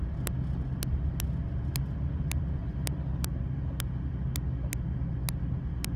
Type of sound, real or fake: real